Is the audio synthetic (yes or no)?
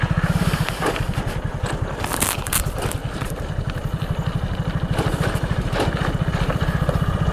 yes